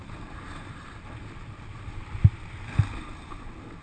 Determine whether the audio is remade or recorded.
recorded